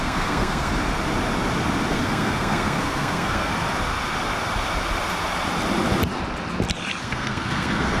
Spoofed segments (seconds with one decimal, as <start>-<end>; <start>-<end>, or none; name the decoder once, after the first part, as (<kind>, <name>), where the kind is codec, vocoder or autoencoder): 0.0-0.7 (codec, SNAC); 1.9-3.5; 7.0-8.0